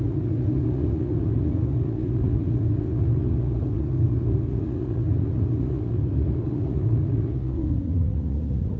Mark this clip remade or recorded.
remade